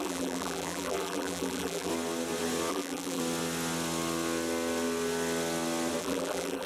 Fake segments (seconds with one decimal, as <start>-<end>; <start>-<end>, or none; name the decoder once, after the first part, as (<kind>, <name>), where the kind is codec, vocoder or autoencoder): 0.0-1.9 (vocoder, BigVGAN v2); 2.7-3.2; 6.0-6.7